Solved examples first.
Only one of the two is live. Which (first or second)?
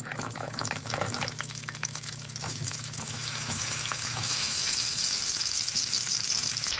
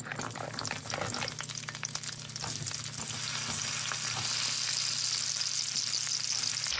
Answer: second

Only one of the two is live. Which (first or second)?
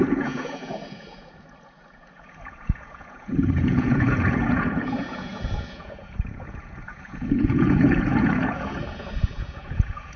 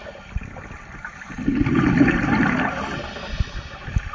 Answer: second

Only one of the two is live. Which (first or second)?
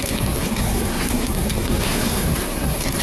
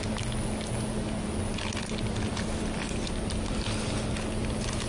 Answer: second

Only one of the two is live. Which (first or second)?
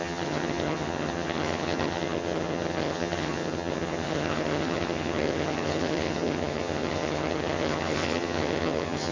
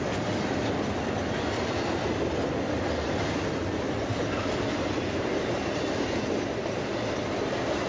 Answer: second